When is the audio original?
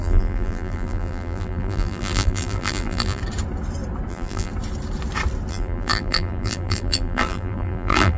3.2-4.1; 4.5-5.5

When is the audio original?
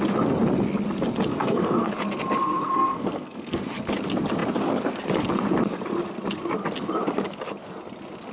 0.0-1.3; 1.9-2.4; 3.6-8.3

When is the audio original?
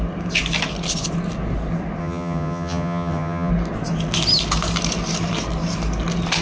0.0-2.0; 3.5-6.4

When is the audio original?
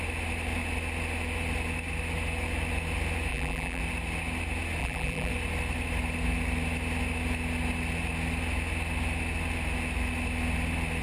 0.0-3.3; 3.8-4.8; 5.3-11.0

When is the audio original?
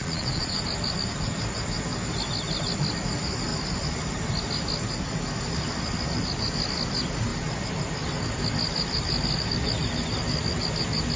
0.6-11.2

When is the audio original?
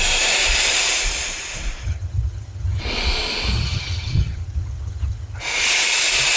0.0-1.8; 2.8-3.5; 5.4-6.4